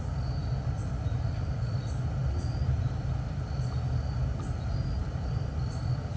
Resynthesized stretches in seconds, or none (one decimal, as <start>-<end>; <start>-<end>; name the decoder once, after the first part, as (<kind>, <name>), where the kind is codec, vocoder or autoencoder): none